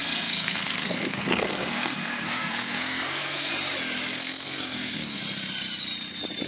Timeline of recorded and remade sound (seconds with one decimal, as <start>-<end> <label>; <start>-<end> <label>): 0.0-3.5 remade; 3.5-4.1 recorded; 4.1-5.2 remade; 5.2-6.5 recorded